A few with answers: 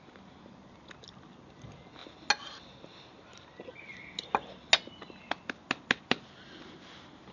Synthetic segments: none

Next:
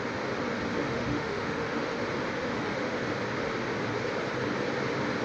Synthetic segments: 0.8-2.0 (autoencoder, DAC-VAE); 2.4-3.1

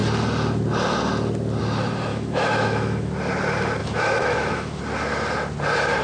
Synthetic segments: 2.1-3.1 (autoencoder, DAC-VAE); 3.8-4.8

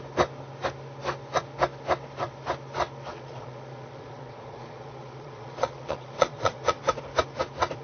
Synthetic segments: 3.1-6.8 (vocoder, Vocos)

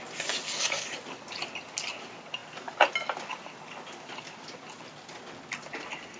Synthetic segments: none

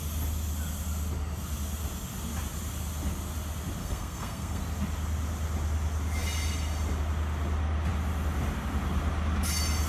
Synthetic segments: 3.8-4.6 (codec, SNAC)